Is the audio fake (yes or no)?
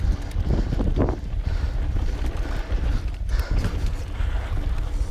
no